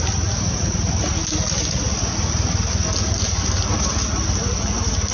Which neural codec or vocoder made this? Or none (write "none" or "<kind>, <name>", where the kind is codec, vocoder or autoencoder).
none